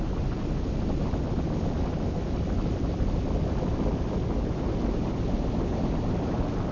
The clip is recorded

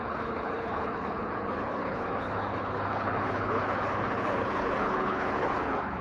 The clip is remade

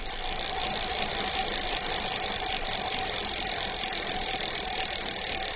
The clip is recorded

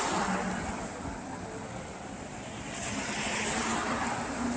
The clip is recorded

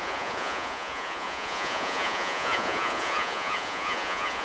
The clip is remade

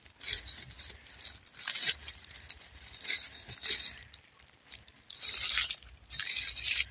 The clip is recorded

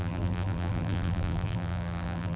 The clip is remade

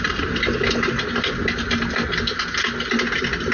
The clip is recorded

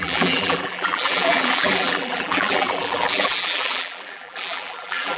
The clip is remade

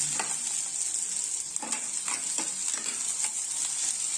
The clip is recorded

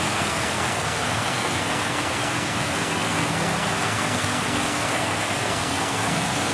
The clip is remade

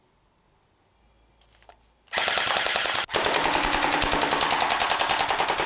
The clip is recorded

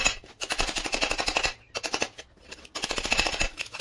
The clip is recorded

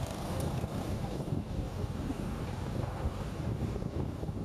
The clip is remade